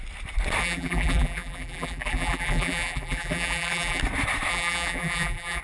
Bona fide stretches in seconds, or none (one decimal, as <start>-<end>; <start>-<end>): 0.0-0.6; 4.0-4.5